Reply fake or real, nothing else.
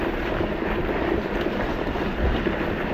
fake